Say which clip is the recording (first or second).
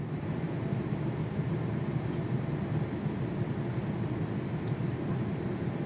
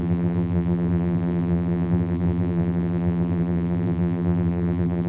first